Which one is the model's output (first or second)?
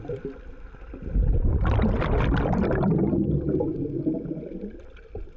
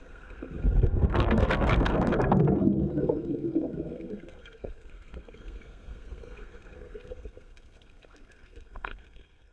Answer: second